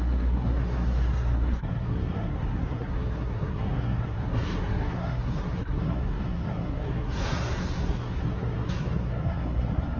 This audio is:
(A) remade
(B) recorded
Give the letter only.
A